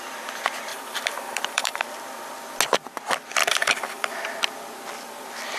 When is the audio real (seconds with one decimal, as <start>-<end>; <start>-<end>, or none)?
0.0-0.7; 1.8-3.4; 4.1-5.6